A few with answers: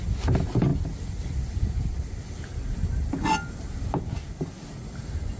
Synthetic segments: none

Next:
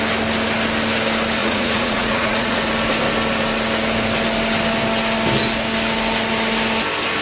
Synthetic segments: 1.4-2.6

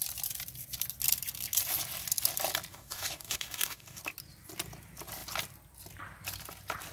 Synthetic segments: 2.7-4.0

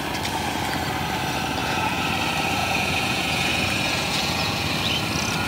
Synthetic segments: 1.6-2.1; 2.6-4.7

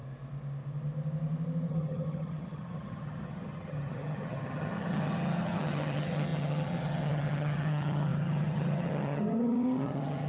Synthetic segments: 1.7-10.3

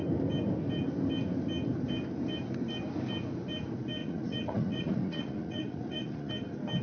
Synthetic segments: 4.0-6.3